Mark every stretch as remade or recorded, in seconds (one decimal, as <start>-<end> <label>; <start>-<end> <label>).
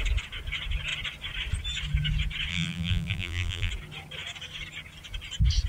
0.0-2.5 recorded; 2.5-3.7 remade; 3.7-5.7 recorded